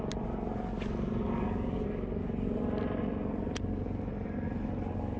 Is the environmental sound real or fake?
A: real